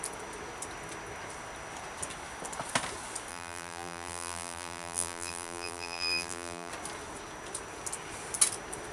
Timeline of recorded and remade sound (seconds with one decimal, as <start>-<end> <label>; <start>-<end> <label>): 0.0-3.3 recorded; 3.3-6.7 remade; 6.7-8.9 recorded